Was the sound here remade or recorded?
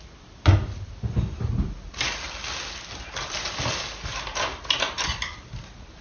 recorded